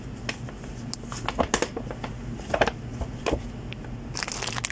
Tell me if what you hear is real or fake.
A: real